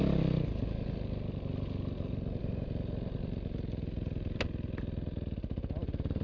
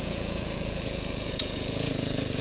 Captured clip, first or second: first